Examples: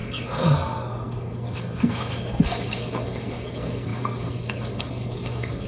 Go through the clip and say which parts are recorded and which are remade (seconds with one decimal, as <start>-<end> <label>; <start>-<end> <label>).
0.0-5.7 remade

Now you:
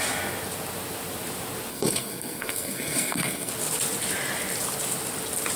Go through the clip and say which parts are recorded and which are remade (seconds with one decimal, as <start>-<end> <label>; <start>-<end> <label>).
0.0-1.7 recorded; 1.7-3.5 remade; 3.5-5.6 recorded

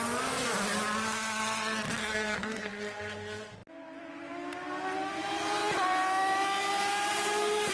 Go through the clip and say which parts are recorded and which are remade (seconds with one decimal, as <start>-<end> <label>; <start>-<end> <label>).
0.0-2.0 recorded; 2.0-2.7 remade; 2.7-7.7 recorded

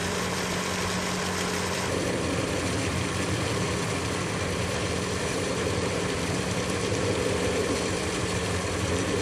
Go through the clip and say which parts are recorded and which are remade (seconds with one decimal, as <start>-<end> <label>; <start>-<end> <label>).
0.0-4.7 recorded; 4.7-9.2 remade

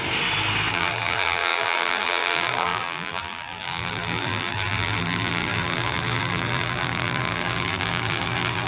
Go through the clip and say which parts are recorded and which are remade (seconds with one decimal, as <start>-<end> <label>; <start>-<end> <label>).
0.0-0.7 recorded; 0.7-8.7 remade

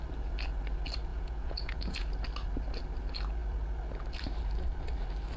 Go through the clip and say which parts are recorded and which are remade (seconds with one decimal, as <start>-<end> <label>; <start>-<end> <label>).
0.0-1.1 recorded; 1.1-2.1 remade; 2.1-5.4 recorded